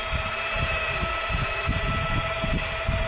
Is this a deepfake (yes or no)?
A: yes